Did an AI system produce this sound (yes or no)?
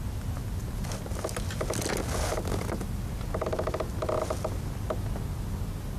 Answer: no